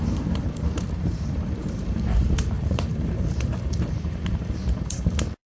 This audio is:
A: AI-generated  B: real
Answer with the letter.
A